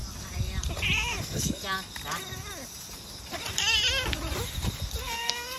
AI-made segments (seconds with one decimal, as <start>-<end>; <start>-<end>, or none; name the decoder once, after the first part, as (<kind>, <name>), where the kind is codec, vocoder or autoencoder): 1.2-1.6 (codec, SNAC); 5.0-5.6